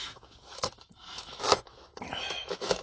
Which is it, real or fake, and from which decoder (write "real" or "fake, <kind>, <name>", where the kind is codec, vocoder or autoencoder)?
fake, autoencoder, DAC-VAE